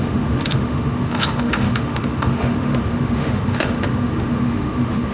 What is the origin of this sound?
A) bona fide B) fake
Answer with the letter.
B